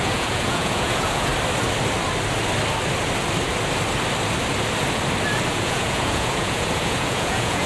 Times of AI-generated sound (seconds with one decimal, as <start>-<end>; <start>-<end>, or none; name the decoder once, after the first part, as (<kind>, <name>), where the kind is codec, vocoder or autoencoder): 0.0-1.3 (vocoder, Vocos); 5.5-7.7